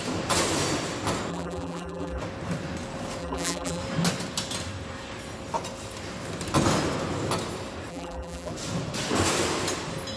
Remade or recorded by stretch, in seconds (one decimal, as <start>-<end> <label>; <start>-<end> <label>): 0.0-1.3 recorded; 1.3-2.2 remade; 2.2-3.2 recorded; 3.2-3.8 remade; 3.8-7.9 recorded; 7.9-8.5 remade; 8.5-10.2 recorded